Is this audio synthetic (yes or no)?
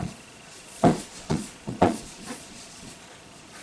yes